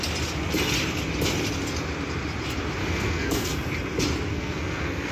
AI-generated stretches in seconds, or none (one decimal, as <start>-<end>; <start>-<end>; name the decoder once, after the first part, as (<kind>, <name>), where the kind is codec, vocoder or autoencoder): 2.8-3.5 (codec, SNAC); 4.3-5.1